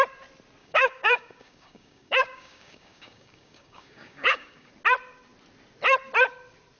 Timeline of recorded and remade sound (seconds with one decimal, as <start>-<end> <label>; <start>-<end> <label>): 0.0-0.6 recorded; 0.6-4.7 remade; 4.7-6.8 recorded